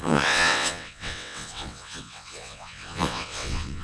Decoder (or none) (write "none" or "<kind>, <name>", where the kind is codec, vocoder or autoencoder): vocoder, WaveNeXt